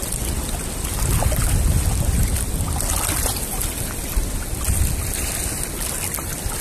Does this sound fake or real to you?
real